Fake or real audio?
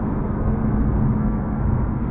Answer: fake